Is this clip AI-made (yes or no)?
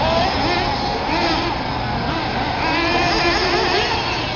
no